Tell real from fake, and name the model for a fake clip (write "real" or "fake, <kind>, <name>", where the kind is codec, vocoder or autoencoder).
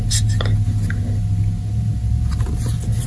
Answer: real